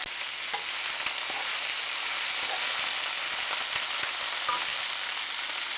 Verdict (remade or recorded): recorded